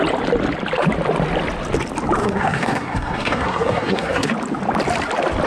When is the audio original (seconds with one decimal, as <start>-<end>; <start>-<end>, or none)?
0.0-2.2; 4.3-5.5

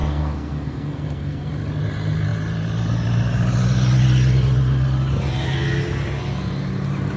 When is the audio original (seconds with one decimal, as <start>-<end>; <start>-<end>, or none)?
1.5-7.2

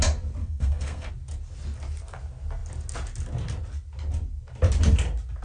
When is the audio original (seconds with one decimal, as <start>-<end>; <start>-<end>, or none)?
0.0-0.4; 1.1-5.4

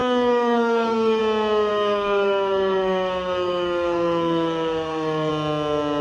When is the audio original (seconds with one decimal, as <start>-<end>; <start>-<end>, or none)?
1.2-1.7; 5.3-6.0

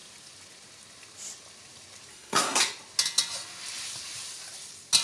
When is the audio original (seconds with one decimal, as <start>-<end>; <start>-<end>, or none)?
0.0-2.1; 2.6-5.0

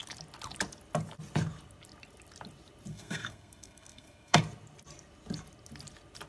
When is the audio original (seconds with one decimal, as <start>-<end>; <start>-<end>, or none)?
0.0-2.9; 4.4-6.3

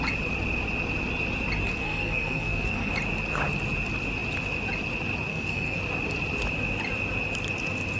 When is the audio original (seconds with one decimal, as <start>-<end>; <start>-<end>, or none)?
0.0-1.7; 2.9-5.3; 5.8-8.0

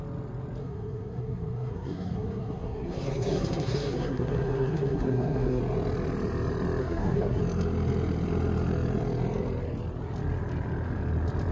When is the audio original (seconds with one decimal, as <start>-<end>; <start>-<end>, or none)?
0.0-0.6; 5.6-6.8; 7.4-11.5